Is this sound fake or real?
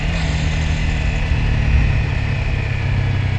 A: real